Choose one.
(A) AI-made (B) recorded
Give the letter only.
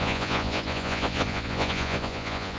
A